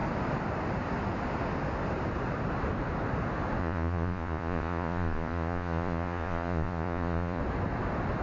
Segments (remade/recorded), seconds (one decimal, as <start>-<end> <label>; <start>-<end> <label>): 0.0-3.6 recorded; 3.6-7.4 remade; 7.4-8.2 recorded